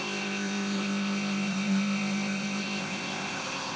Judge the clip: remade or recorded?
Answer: remade